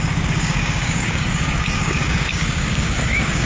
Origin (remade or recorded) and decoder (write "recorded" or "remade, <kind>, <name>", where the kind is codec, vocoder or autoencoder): remade, codec, DAC